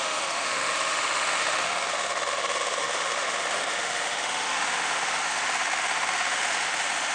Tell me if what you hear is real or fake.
fake